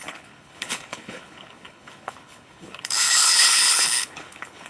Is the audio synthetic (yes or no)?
yes